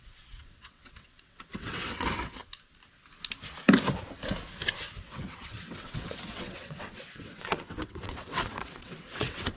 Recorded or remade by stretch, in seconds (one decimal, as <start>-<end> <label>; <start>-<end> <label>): 0.0-2.4 remade; 2.4-5.0 recorded; 5.0-9.6 remade